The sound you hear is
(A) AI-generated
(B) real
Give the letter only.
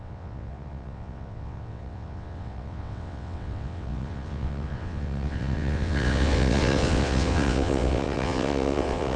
A